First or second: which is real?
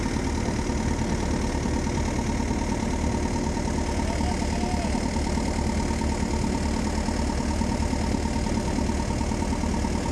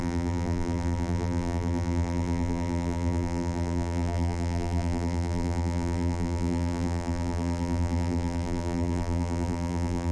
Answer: first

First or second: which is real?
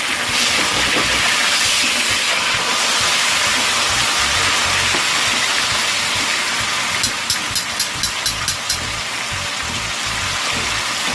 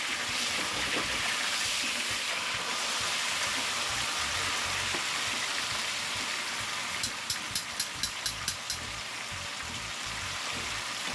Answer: first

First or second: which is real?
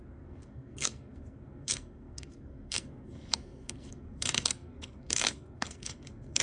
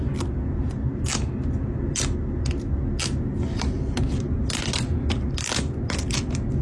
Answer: second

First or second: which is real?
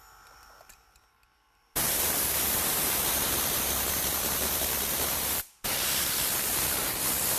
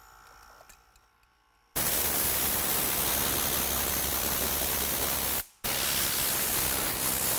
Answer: second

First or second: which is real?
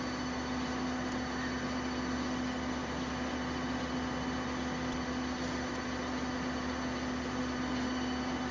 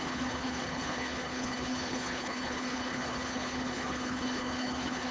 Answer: first